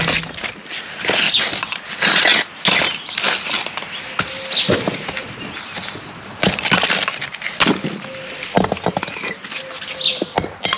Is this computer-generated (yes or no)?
no